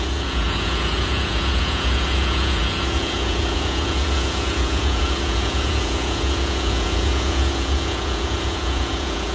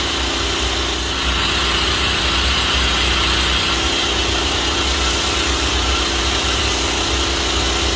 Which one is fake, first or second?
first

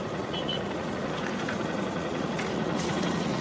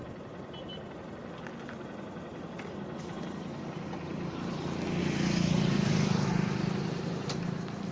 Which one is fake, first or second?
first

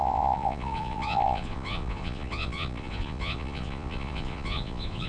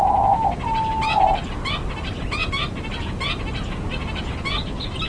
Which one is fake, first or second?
first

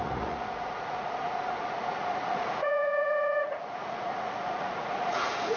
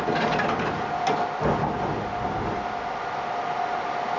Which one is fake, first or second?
first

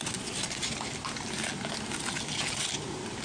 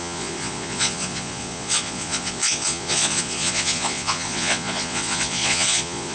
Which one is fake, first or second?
second